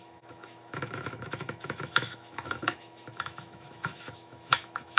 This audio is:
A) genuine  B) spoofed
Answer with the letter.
B